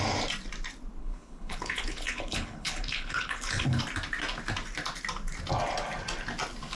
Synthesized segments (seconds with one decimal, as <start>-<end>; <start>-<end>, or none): 1.0-3.8